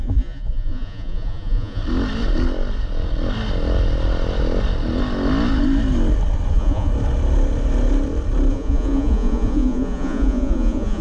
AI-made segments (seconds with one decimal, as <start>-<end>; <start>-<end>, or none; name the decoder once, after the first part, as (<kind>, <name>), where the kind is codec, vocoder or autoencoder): 0.0-1.8 (vocoder, Vocos); 6.5-6.9; 8.5-11.0